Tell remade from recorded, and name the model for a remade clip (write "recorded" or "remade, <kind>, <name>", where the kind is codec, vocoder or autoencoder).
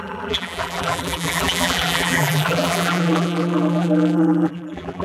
remade, vocoder, BigVGAN v2